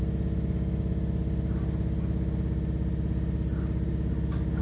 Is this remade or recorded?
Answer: recorded